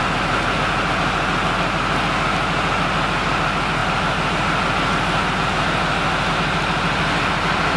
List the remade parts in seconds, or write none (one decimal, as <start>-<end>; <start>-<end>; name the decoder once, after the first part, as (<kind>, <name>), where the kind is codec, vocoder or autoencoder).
none